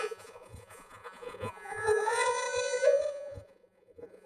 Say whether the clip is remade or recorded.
remade